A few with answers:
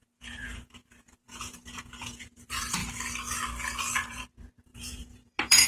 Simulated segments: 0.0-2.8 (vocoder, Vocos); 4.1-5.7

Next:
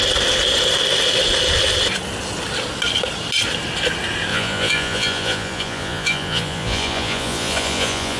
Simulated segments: 4.3-8.2 (vocoder, Vocos)

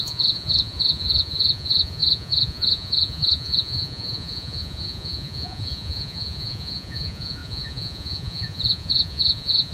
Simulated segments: 0.0-9.7 (vocoder, Vocos)

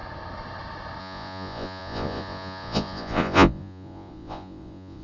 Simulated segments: 1.0-5.0 (vocoder, Vocos)

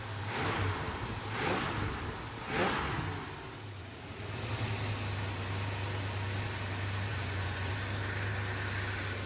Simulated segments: 7.1-7.7 (vocoder, Vocos)

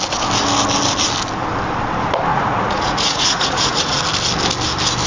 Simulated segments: 2.3-4.0 (vocoder, Vocos)